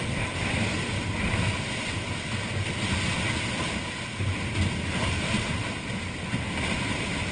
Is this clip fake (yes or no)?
no